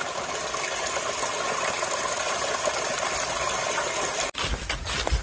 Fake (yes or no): no